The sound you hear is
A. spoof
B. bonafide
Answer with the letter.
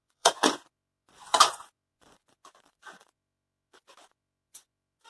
A